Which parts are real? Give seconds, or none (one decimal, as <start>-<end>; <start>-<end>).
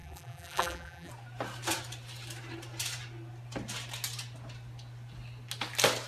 1.1-6.1